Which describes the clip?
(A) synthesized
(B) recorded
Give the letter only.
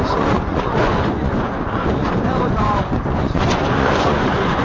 A